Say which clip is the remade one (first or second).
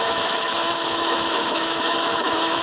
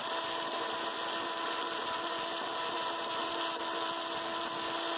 first